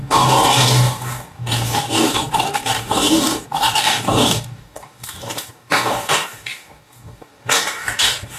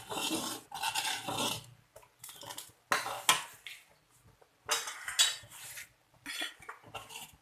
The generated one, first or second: first